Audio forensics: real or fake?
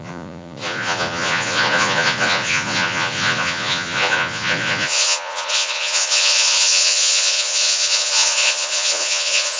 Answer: fake